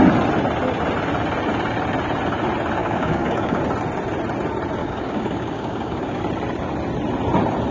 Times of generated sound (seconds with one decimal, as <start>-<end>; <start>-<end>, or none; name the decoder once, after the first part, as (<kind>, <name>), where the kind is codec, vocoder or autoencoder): 2.8-3.6 (codec, DAC); 4.8-6.2